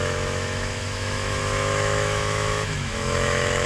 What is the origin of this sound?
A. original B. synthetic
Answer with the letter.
B